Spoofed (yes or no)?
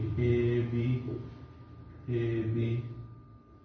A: no